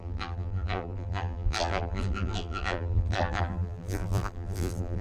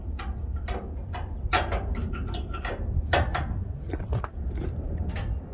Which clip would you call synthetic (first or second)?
first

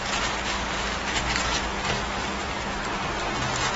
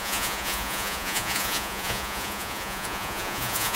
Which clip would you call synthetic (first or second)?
second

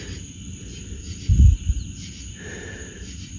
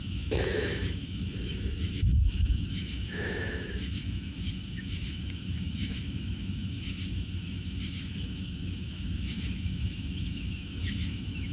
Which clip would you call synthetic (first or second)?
second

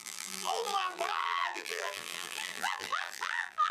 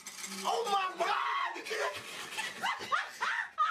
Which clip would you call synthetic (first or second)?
first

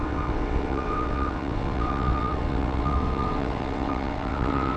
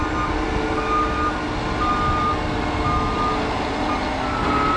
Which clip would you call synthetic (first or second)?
first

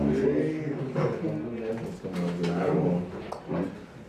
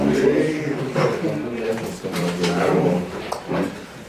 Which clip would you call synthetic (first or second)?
second